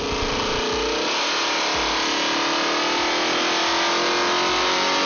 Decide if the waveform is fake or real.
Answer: real